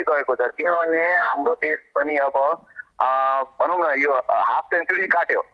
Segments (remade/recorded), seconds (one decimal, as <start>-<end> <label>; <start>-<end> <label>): 0.0-0.5 recorded; 0.5-2.1 remade; 2.1-5.5 recorded